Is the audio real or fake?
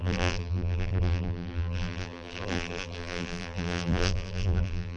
fake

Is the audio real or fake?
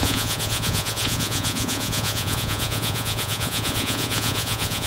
fake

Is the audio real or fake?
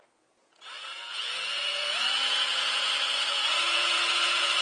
fake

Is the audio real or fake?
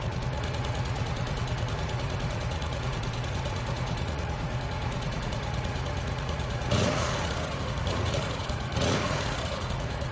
fake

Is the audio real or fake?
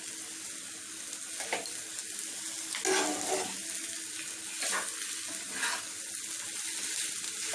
real